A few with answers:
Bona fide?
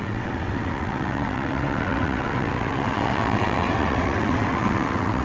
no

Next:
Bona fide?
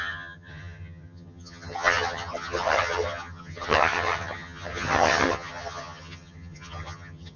no